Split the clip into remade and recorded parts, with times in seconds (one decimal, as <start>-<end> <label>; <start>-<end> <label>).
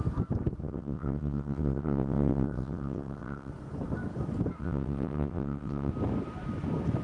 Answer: 0.0-0.6 recorded; 0.6-3.5 remade; 3.5-4.6 recorded; 4.6-5.9 remade; 5.9-7.0 recorded